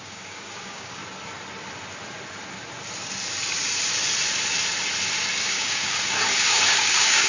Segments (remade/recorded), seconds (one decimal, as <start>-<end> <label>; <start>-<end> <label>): 0.0-1.0 remade; 1.0-5.4 recorded; 5.4-7.3 remade

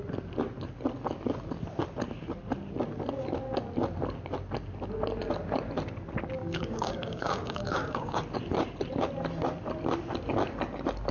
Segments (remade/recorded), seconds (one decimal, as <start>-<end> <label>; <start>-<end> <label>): 0.0-6.4 recorded; 6.4-8.2 remade; 8.2-11.1 recorded

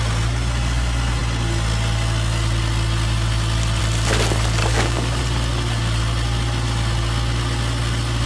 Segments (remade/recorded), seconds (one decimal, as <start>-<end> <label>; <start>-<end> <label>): 0.0-4.6 recorded; 4.6-5.2 remade; 5.2-8.3 recorded

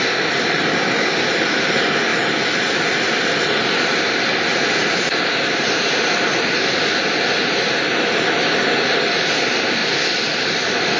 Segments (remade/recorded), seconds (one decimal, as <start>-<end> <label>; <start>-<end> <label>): 0.0-0.7 recorded; 0.7-1.3 remade; 1.3-11.0 recorded

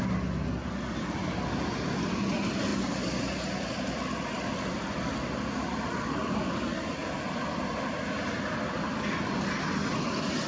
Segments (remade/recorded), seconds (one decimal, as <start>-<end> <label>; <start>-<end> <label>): 0.0-10.5 recorded

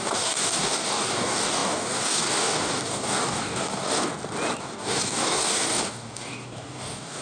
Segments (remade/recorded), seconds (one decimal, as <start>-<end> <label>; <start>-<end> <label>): 0.0-4.1 remade; 4.1-4.6 recorded; 4.6-7.2 remade

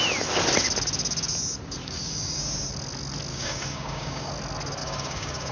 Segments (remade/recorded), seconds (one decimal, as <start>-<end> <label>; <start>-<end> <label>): 0.0-1.8 recorded; 1.8-2.4 remade; 2.4-3.3 recorded; 3.3-4.3 remade; 4.3-4.8 recorded; 4.8-5.5 remade

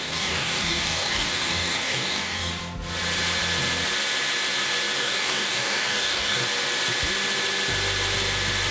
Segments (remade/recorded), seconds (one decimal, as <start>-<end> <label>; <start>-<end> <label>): 0.0-2.5 remade; 2.5-5.0 recorded; 5.0-6.4 remade; 6.4-8.7 recorded